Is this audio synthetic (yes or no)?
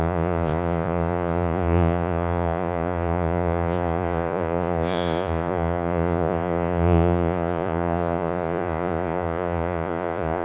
yes